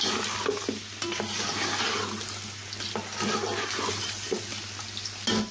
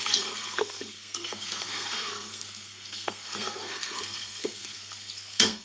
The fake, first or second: second